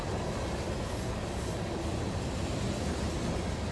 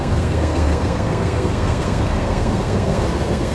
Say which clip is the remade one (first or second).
second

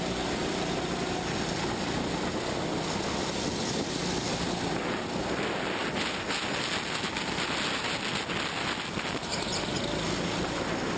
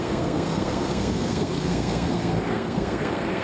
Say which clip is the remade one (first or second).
second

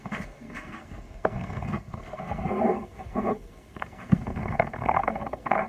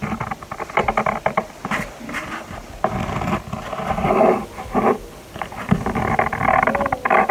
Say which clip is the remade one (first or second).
first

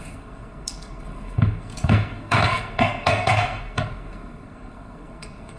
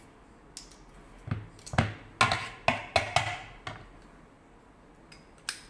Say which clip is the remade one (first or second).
first